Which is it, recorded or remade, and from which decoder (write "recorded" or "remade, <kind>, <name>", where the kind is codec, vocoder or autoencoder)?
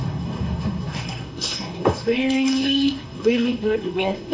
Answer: remade, codec, SNAC